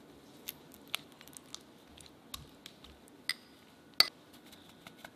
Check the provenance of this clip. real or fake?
real